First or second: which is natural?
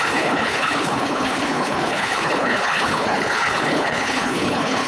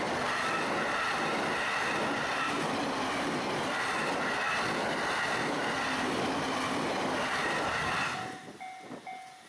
second